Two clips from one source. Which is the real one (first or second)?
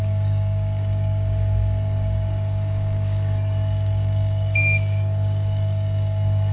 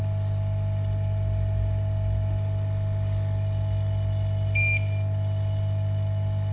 second